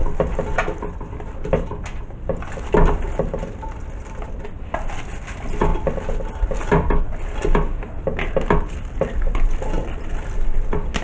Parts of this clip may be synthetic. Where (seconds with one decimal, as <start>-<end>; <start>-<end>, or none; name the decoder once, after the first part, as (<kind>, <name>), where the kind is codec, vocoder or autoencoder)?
none